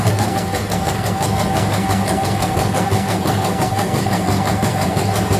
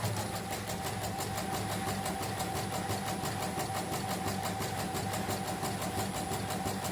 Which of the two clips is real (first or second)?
second